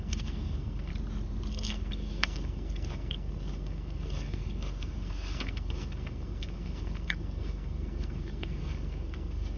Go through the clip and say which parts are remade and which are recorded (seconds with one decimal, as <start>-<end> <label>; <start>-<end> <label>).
0.0-0.9 remade; 0.9-1.5 recorded; 1.5-9.6 remade